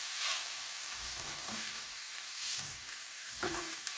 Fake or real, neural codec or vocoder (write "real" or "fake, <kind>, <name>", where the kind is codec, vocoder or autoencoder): fake, codec, DAC